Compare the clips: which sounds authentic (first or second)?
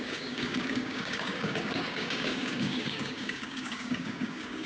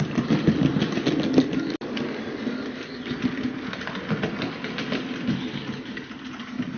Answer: second